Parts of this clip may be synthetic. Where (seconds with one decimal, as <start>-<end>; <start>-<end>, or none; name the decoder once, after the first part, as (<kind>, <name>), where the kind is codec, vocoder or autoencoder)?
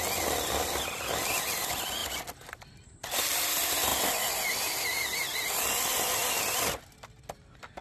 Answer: none